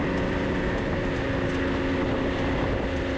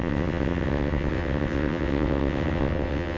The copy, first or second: second